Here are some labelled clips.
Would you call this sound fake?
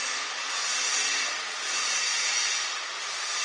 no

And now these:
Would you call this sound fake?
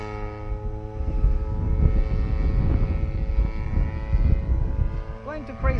no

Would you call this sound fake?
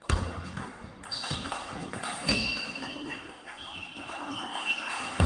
yes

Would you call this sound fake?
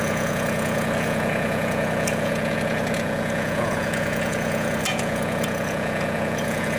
yes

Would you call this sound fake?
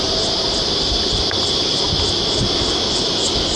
no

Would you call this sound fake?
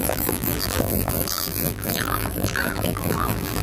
yes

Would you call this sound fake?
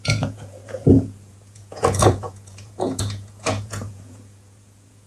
yes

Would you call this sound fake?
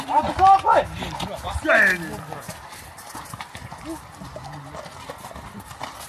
no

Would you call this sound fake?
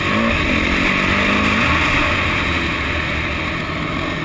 no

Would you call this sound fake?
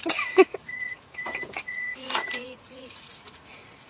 yes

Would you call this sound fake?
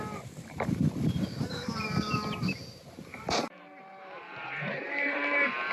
yes